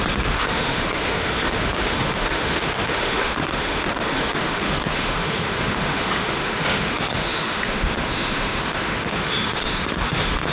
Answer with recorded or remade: remade